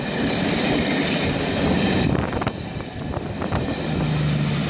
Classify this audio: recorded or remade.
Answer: recorded